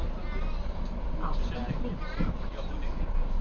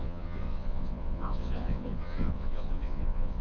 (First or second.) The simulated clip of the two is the second